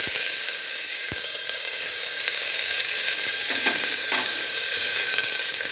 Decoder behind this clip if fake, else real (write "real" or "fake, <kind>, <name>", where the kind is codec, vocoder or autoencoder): fake, codec, DAC